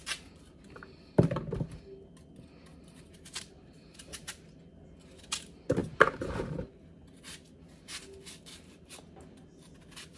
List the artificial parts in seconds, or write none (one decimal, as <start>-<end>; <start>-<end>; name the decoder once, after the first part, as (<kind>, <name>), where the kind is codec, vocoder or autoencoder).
2.7-4.6 (vocoder, BigVGAN v2); 5.8-7.0